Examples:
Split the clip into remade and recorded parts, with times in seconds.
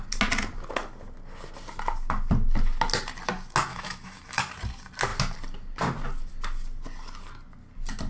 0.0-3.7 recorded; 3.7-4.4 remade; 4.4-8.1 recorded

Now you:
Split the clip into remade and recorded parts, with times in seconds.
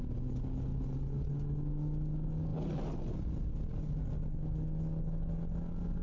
0.0-6.0 recorded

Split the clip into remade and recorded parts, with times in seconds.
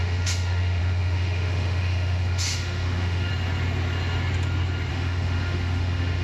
0.0-3.3 remade; 3.3-4.9 recorded; 4.9-6.2 remade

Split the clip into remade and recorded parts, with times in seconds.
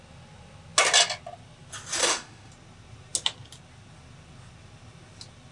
0.0-2.0 recorded; 2.0-2.5 remade; 2.5-5.5 recorded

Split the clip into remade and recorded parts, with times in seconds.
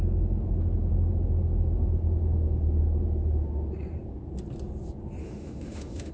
0.0-5.2 recorded; 5.2-6.1 remade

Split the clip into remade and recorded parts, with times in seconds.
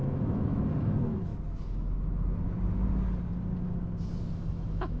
0.0-1.3 remade; 1.3-4.3 recorded; 4.3-5.0 remade